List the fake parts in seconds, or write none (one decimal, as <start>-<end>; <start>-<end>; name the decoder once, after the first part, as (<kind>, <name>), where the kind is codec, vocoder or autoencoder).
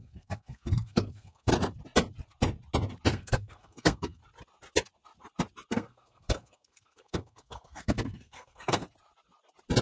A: 0.0-1.5 (codec, SNAC); 3.1-4.2; 5.7-8.8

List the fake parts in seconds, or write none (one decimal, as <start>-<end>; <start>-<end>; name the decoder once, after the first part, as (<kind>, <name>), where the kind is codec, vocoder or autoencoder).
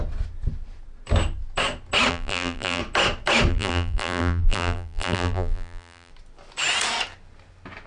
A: 2.1-2.8 (vocoder, BigVGAN v2); 3.5-6.1